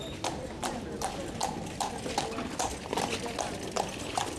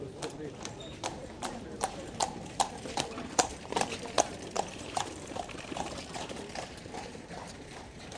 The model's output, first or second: second